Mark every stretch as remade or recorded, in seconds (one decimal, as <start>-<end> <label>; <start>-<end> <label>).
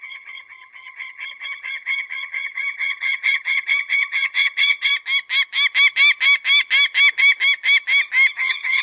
0.0-4.9 remade; 4.9-8.4 recorded; 8.4-8.8 remade